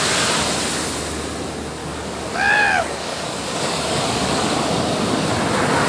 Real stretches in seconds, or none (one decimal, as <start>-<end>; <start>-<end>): 0.0-1.8; 5.3-5.9